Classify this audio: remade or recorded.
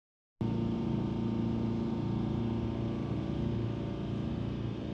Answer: recorded